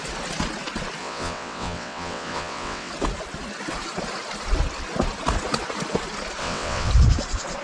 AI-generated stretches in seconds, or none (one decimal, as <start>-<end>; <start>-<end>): 1.0-2.9; 6.4-6.9